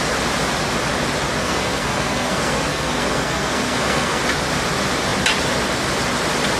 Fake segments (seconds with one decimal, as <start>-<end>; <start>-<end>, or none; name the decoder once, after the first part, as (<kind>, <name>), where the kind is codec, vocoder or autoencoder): 1.4-4.2 (codec, SNAC)